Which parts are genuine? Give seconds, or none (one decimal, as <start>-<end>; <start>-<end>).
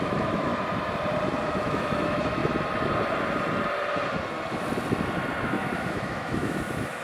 0.5-1.4; 2.4-5.4